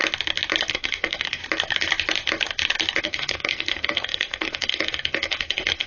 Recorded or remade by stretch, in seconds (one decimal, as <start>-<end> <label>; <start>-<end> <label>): 0.0-0.7 recorded; 0.7-1.4 remade; 1.4-3.0 recorded; 3.0-5.9 remade